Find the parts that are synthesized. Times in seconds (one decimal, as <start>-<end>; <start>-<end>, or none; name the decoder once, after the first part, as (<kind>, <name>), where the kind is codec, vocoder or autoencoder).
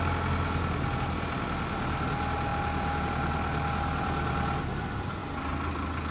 2.5-3.1 (vocoder, BigVGAN v2)